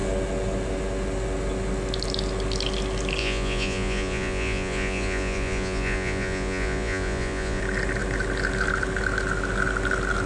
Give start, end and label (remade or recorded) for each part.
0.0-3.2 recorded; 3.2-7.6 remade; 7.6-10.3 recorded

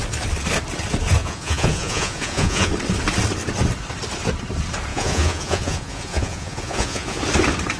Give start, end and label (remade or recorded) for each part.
0.0-1.2 recorded; 1.2-2.7 remade; 2.7-4.9 recorded; 4.9-7.2 remade; 7.2-7.8 recorded

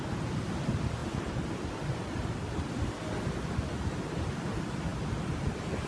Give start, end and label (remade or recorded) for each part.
0.0-5.9 recorded